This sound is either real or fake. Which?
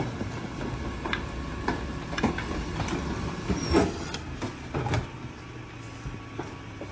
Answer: real